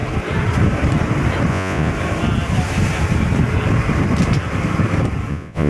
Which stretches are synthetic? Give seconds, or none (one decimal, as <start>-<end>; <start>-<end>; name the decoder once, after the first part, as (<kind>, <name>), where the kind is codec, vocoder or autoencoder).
1.5-1.9 (vocoder, Vocos); 5.3-5.7